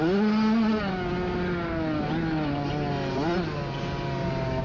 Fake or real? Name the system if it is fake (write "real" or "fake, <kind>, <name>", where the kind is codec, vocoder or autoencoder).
real